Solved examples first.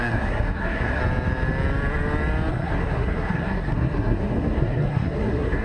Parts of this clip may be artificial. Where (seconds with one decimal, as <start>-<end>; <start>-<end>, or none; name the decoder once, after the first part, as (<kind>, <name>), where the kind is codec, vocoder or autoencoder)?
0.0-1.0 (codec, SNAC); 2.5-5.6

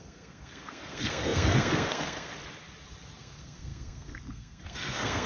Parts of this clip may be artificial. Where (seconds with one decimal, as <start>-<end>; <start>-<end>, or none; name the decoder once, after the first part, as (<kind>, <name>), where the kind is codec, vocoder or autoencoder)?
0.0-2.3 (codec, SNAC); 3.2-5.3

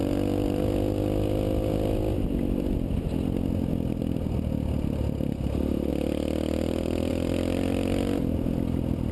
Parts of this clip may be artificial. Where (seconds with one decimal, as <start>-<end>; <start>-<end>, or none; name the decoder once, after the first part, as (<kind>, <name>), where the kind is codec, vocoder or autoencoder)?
none

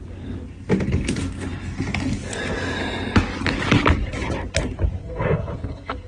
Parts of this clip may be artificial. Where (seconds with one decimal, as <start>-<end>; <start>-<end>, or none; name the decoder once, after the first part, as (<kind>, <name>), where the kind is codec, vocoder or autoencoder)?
5.0-6.1 (codec, SNAC)

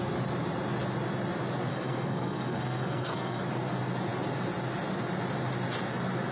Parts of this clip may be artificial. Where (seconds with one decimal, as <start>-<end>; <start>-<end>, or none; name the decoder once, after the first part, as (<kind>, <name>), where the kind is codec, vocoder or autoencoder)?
1.7-3.4 (codec, SNAC)